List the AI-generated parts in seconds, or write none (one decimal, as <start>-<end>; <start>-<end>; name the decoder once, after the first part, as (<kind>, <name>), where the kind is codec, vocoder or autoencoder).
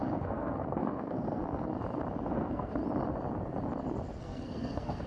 0.0-1.7 (codec, SNAC); 2.3-2.8; 4.2-5.1